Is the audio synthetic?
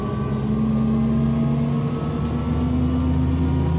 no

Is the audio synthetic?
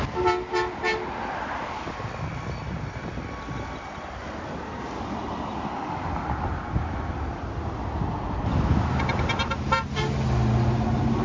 no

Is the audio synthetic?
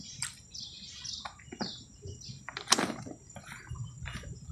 no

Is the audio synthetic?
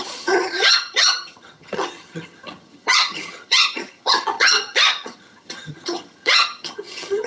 yes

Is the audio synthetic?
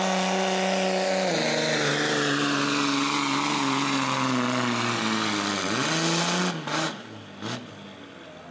no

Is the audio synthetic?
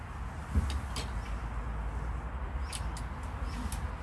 no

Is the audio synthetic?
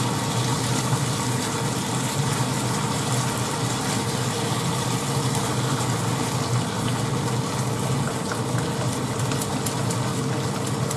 no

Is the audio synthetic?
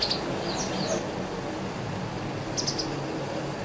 no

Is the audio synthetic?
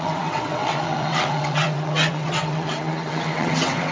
yes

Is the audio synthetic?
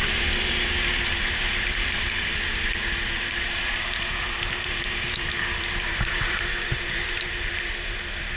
yes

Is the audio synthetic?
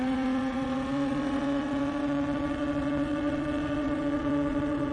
yes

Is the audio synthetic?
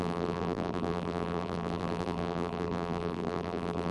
yes